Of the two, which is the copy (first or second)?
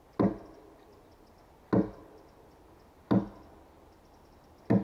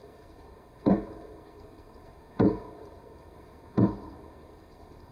second